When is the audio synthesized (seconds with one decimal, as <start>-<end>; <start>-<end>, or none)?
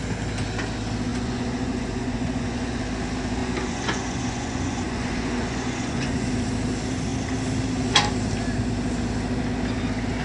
1.1-2.8; 3.4-6.3